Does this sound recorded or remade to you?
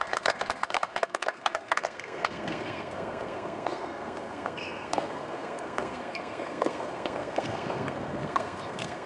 remade